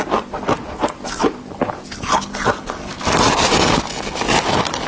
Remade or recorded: recorded